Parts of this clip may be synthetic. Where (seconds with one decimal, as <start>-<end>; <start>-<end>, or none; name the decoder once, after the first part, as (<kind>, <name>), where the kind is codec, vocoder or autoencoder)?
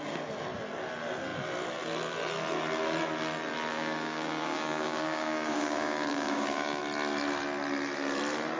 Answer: 3.7-6.8 (codec, DAC)